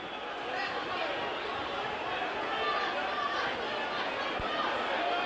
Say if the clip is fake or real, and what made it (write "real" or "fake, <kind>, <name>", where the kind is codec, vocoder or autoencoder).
real